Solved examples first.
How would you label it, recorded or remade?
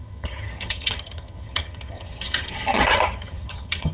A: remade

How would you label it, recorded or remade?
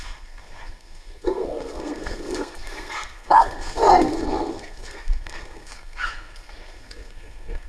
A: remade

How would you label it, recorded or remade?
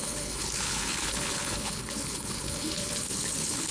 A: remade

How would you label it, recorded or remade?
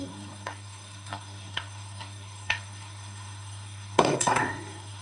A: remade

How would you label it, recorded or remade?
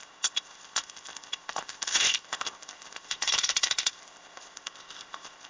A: remade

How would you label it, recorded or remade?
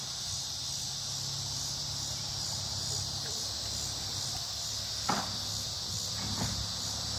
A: remade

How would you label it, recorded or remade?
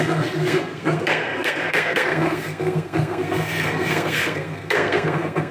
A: remade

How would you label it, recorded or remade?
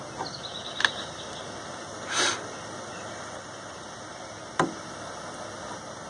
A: recorded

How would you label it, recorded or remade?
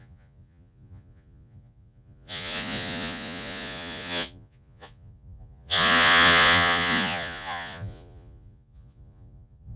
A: remade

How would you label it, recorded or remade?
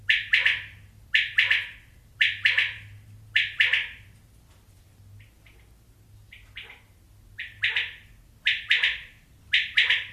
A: recorded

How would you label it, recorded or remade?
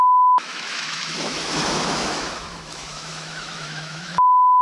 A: remade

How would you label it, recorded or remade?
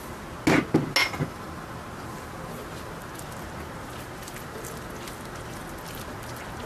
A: recorded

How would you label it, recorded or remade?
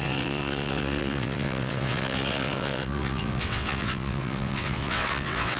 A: remade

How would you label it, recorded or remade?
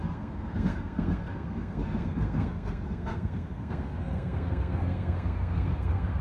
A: remade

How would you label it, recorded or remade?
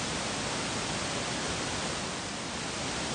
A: recorded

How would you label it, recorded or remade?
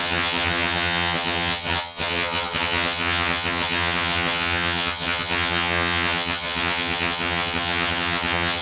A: remade